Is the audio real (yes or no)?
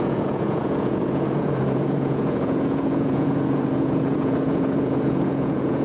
no